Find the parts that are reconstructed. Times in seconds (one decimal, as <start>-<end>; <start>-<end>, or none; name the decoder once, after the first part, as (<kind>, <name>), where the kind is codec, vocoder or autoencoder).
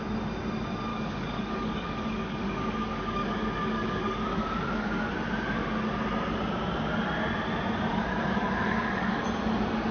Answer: 0.9-5.1 (codec, DAC); 7.9-9.2